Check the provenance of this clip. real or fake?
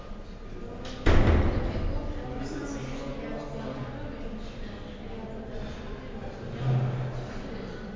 real